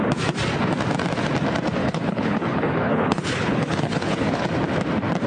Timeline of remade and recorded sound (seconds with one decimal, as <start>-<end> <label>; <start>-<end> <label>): 0.0-1.8 recorded; 1.8-4.4 remade; 4.4-5.3 recorded